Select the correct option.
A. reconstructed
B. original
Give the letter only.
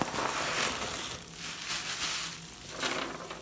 B